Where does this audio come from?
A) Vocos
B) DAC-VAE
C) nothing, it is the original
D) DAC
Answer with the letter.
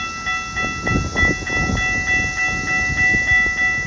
C